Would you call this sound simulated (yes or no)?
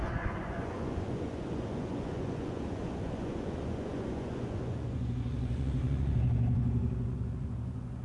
yes